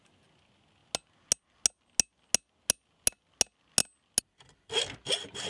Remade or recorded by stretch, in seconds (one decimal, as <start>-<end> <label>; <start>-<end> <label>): 0.0-5.5 recorded